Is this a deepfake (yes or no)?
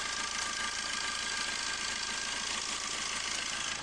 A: no